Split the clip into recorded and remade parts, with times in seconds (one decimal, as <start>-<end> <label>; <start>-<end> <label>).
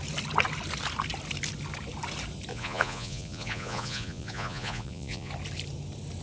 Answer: 0.0-2.5 recorded; 2.5-5.3 remade; 5.3-6.2 recorded